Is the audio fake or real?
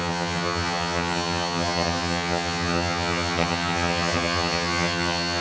fake